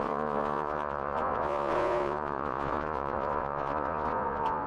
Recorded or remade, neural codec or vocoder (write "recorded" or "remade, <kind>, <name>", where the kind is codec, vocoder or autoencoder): remade, vocoder, Vocos